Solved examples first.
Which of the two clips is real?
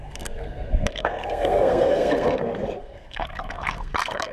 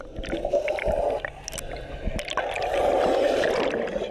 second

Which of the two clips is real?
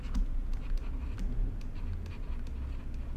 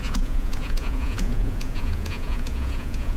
first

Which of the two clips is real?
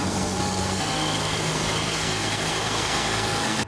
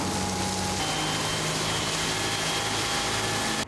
second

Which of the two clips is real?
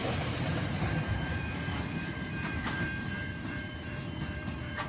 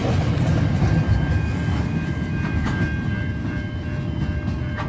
second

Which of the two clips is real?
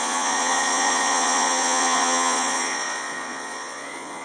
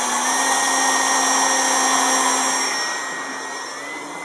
second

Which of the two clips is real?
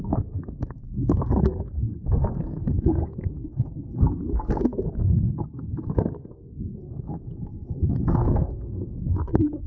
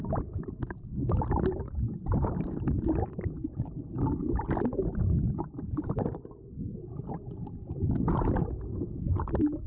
second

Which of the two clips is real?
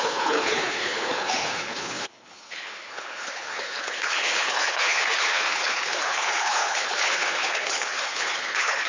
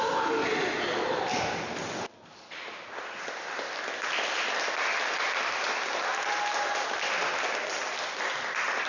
second